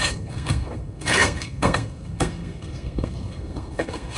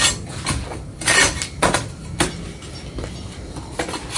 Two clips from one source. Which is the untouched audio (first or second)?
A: second